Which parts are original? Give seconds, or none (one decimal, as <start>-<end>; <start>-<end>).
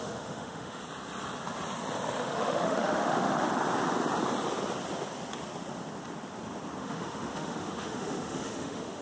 0.8-2.2; 3.3-6.8